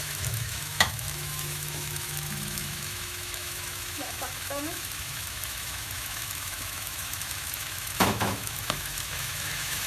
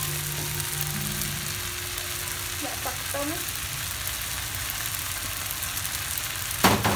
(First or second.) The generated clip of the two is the first